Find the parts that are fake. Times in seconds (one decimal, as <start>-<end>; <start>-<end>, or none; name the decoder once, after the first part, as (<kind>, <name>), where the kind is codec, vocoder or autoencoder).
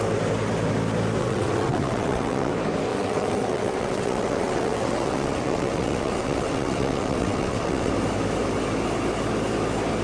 1.2-2.5 (vocoder, WaveNeXt); 2.9-7.9